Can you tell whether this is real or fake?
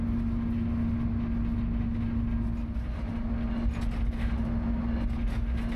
real